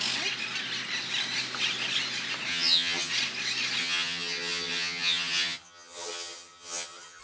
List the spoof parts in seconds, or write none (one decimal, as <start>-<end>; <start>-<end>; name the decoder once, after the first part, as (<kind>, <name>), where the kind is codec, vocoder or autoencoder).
2.5-3.1 (vocoder, HiFi-GAN); 3.8-7.2